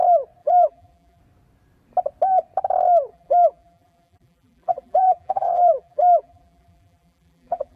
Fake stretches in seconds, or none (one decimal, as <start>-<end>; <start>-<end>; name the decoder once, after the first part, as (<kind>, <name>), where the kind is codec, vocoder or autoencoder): 0.4-1.2 (vocoder, BigVGAN v2); 3.1-7.8